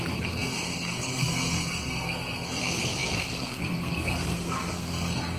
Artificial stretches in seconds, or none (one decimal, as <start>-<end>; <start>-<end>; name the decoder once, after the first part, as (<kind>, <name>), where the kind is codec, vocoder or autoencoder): 0.0-5.4 (codec, SNAC)